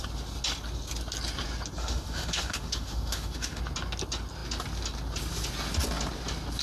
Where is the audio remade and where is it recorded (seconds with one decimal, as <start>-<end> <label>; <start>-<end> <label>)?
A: 0.0-1.8 recorded; 1.8-3.6 remade; 3.6-6.6 recorded